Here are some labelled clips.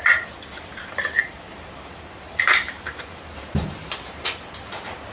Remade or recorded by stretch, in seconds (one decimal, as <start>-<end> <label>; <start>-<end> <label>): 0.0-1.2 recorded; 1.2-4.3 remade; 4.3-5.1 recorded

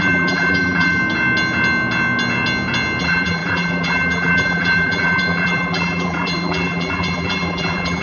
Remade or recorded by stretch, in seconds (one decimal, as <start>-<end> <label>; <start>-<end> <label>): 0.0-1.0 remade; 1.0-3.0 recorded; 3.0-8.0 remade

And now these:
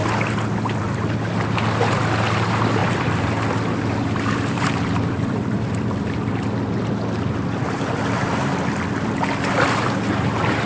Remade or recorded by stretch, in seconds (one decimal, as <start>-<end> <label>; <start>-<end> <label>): 0.0-2.8 recorded; 2.8-6.3 remade; 6.3-10.7 recorded

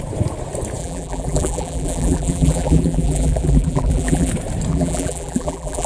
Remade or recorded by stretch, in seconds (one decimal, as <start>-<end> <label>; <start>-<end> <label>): 0.0-0.8 recorded; 0.8-4.3 remade; 4.3-4.7 recorded; 4.7-5.9 remade

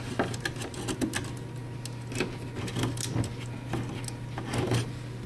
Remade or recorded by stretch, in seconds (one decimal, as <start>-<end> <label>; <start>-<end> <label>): 0.0-5.3 recorded